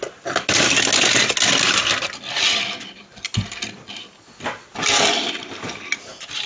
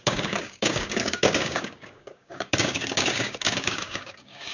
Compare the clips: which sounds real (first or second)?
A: first